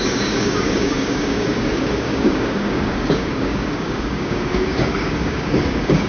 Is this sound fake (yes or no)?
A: yes